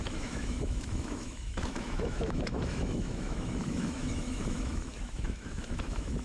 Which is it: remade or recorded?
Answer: remade